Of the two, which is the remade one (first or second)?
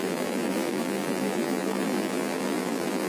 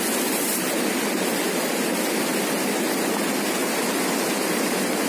first